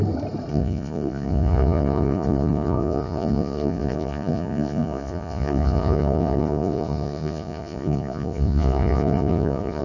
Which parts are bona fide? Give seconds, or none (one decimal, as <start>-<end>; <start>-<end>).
0.0-0.5